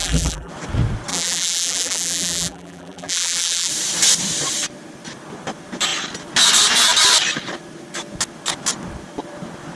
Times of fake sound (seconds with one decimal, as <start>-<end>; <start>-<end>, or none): 0.0-0.5; 1.1-3.7